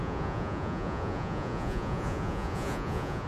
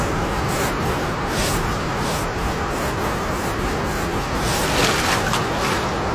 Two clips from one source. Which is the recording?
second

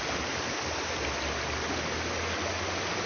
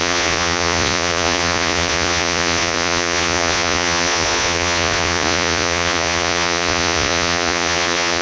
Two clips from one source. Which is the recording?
first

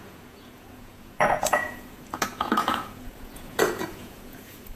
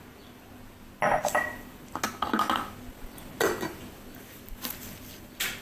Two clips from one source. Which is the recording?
second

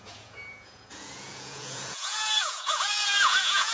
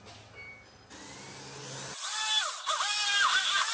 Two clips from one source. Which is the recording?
second